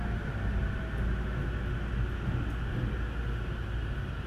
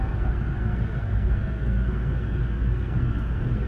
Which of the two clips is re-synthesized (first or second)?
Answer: second